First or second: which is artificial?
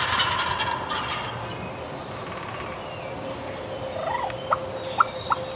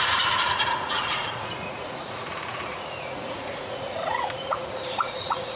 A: second